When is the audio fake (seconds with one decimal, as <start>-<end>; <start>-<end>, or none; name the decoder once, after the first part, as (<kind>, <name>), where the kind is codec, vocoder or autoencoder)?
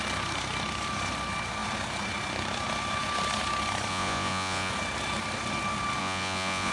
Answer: 3.9-4.7 (vocoder, Vocos); 6.0-6.7